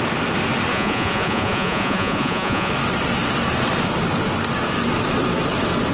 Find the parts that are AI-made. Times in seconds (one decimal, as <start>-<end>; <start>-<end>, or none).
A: 0.7-2.7